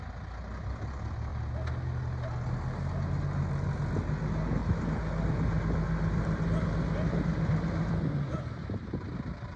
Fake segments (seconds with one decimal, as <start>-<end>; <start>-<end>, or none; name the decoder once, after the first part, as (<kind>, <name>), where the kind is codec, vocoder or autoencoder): 4.6-9.6 (vocoder, BigVGAN v2)